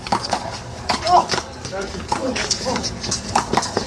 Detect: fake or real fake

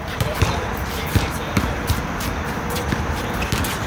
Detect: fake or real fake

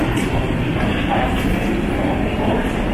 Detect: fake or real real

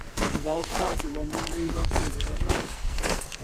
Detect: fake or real fake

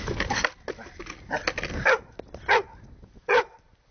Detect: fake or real real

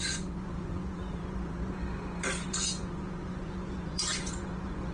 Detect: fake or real fake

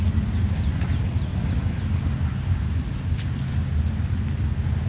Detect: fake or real real